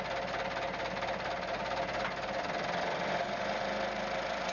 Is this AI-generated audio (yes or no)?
no